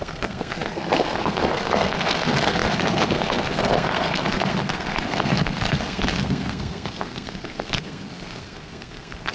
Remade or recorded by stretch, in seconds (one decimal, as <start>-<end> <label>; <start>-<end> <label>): 0.0-9.3 remade